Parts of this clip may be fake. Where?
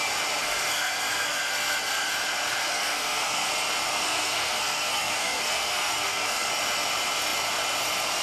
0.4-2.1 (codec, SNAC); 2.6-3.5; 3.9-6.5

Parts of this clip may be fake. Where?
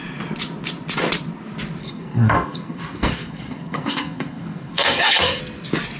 1.8-5.4 (codec, SNAC)